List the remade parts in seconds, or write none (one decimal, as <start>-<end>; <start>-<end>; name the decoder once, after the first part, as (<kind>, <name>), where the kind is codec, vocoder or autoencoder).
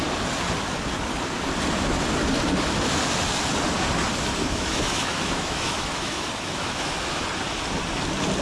4.4-7.2 (autoencoder, DAC-VAE)